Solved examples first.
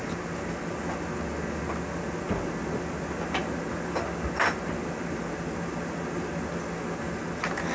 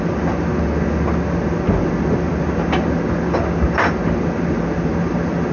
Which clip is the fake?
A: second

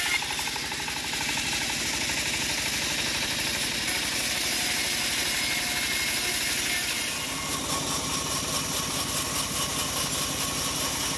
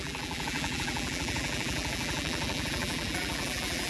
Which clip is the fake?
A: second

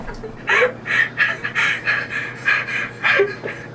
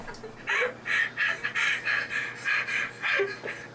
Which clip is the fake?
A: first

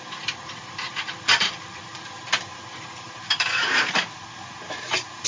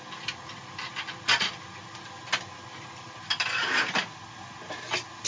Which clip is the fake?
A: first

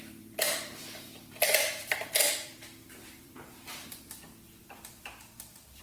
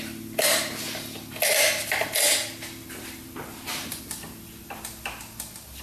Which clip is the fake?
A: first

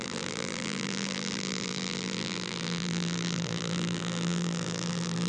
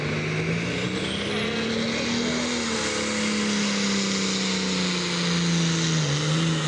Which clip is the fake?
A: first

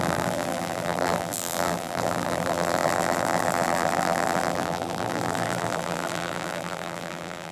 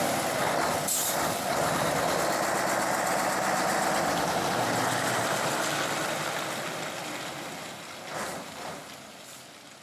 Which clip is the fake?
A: first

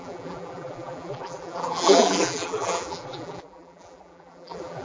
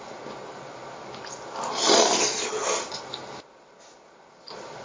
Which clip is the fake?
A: first